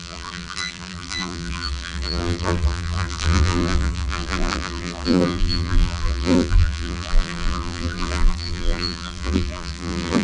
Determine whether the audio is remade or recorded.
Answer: remade